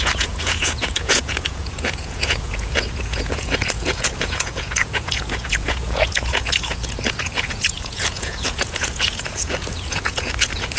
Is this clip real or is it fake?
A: fake